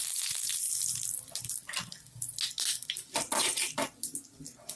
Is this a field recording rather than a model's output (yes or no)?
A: yes